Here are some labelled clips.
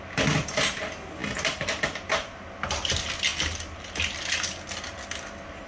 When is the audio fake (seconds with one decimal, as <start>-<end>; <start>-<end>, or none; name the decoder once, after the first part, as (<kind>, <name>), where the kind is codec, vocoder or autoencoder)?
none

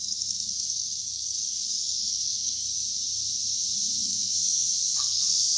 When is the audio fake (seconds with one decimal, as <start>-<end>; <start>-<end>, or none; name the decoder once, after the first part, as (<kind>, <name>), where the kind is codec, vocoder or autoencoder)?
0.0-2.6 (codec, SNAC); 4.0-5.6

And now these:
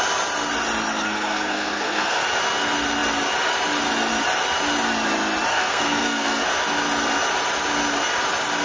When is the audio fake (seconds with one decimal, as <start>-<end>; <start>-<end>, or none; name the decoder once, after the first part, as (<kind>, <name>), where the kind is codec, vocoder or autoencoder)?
0.9-2.2 (codec, SNAC); 5.5-6.5

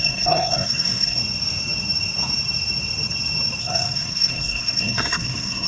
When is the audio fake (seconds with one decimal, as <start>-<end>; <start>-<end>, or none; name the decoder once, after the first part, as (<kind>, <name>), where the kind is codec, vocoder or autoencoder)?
0.0-1.2 (codec, SNAC); 3.6-5.7

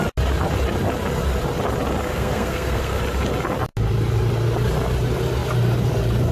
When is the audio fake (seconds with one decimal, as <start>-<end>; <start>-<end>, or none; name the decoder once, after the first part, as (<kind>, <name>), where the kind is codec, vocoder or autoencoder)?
2.1-3.0 (codec, SNAC)

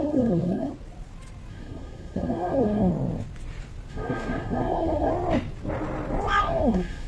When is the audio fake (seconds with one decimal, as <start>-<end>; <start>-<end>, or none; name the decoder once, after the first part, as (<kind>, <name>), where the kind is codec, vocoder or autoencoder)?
0.0-0.7 (codec, SNAC); 1.5-2.9; 3.9-5.1; 6.4-7.1

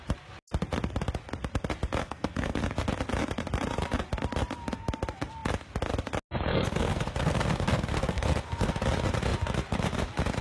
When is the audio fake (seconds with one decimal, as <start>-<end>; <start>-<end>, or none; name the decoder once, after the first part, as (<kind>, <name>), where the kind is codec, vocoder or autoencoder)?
2.0-2.6 (codec, SNAC); 6.5-8.8

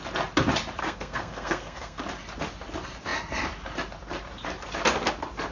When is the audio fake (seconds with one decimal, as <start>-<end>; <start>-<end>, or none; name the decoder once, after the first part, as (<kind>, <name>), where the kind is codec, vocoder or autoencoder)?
0.8-2.0 (codec, SNAC)